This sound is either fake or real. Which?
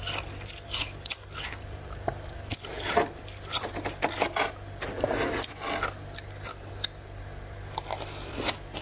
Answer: real